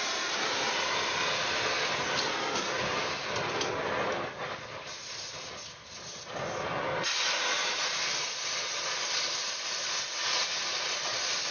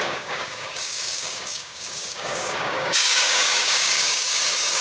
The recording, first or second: first